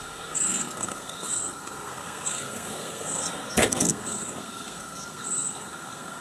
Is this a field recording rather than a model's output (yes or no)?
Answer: no